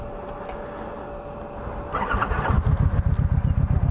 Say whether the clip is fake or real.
real